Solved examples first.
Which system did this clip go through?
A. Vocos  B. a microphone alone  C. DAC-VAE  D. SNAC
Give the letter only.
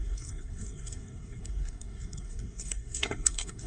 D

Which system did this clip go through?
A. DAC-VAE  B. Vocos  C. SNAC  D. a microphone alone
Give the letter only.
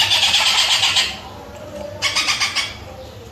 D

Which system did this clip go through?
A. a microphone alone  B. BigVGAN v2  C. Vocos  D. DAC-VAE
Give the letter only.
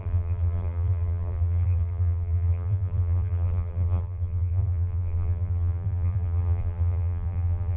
B